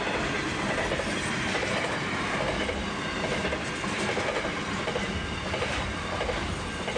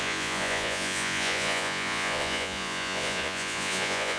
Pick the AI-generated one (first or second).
second